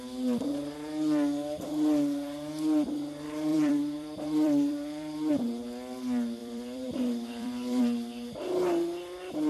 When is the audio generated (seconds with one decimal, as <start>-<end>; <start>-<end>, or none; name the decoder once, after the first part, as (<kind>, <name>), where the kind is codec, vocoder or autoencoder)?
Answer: 3.5-5.3 (vocoder, BigVGAN v2); 6.4-7.8